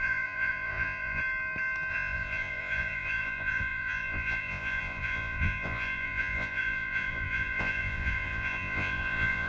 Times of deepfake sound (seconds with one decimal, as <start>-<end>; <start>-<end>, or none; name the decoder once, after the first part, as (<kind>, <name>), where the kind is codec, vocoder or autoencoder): 0.0-1.2 (vocoder, Vocos); 1.9-9.5